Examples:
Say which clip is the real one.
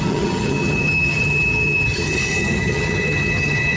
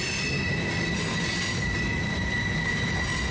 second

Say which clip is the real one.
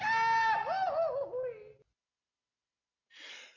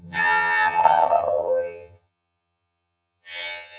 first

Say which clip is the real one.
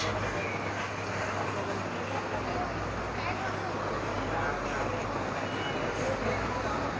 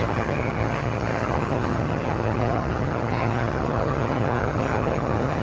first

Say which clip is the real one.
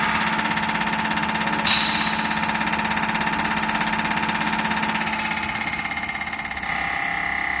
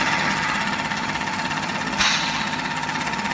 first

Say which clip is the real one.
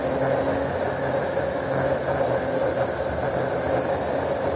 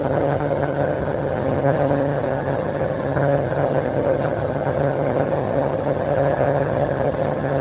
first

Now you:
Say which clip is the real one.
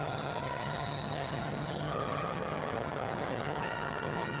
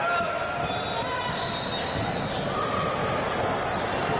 second